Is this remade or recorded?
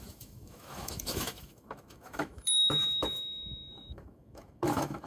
remade